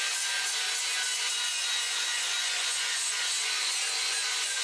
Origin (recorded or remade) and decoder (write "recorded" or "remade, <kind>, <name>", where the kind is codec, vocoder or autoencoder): remade, vocoder, Vocos